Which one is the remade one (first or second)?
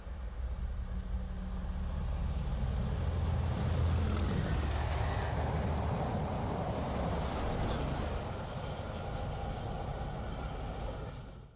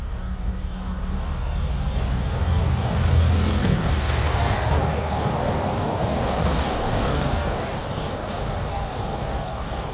second